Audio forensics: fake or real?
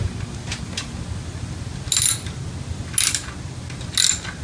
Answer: real